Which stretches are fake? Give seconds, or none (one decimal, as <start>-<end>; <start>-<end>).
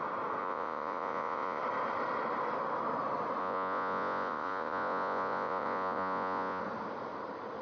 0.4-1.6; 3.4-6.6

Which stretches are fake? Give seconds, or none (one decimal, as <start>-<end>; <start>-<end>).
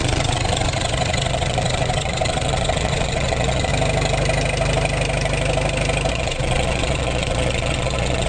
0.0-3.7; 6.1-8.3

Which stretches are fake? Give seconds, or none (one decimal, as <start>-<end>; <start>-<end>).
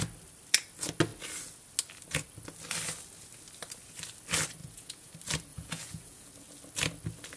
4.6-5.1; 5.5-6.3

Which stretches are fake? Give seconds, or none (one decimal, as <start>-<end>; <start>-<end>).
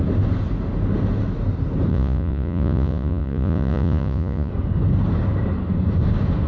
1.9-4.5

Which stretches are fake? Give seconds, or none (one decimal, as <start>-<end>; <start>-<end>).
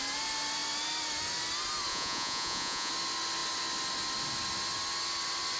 1.9-2.9